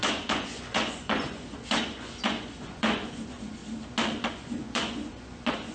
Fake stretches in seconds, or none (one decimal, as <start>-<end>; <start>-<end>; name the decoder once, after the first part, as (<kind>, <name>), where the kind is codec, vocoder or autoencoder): 0.0-3.6 (vocoder, Vocos); 4.3-5.7